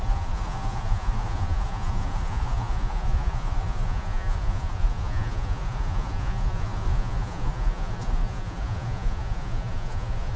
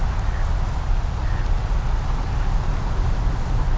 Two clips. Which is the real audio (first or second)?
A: second